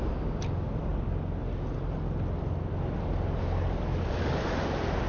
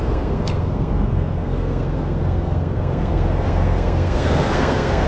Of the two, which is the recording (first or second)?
first